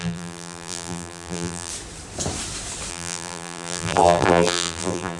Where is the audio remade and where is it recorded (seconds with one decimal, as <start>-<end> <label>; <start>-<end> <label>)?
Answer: 0.0-1.7 remade; 1.7-2.9 recorded; 2.9-5.2 remade